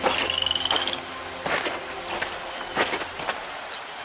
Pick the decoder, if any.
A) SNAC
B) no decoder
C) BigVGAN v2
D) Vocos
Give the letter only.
B